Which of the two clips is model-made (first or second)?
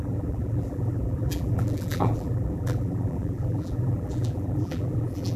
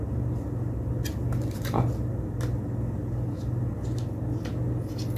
first